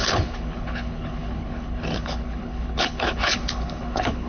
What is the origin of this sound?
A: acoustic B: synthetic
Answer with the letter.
B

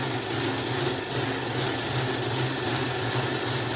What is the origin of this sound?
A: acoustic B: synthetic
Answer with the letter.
A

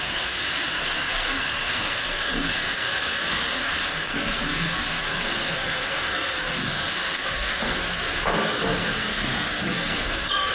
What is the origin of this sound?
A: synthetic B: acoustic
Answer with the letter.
A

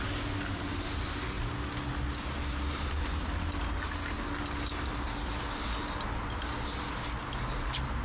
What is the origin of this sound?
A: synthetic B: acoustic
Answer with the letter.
B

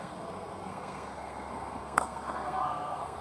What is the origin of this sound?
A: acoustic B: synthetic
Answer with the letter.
B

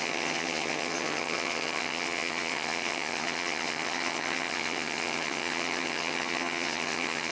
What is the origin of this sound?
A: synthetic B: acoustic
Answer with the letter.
A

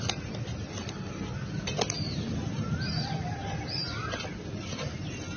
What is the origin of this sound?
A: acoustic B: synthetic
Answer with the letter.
A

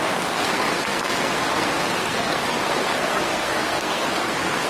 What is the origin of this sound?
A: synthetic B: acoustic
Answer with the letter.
A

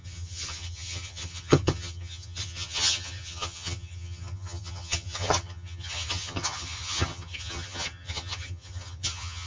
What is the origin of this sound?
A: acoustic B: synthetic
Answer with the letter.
B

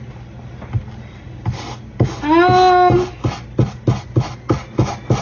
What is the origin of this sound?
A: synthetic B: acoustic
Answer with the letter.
B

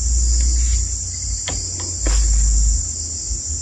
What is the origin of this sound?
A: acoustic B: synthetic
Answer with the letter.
A